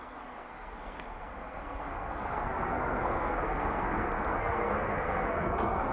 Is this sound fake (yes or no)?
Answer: yes